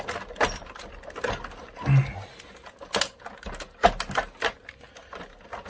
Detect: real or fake real